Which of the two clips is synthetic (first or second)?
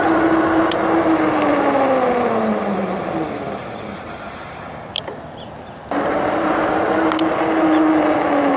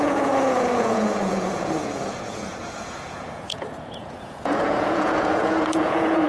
second